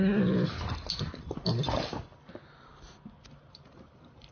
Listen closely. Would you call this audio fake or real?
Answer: real